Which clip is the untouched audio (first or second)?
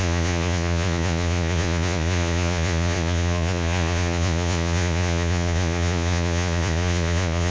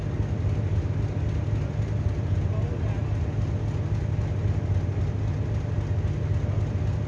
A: second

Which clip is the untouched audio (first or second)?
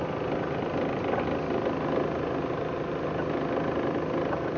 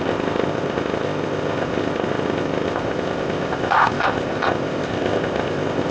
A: first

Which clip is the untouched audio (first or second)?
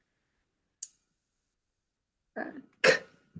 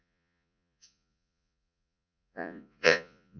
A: first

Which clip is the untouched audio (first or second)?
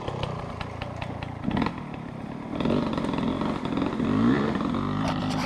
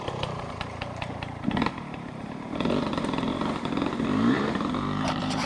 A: first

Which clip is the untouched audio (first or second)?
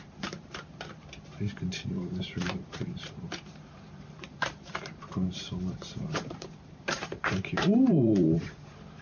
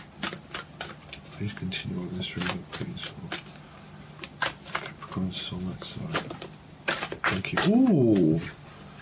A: second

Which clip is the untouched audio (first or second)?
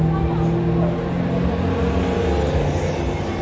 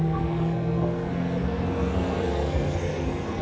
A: first